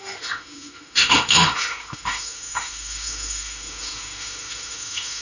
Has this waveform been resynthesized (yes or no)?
yes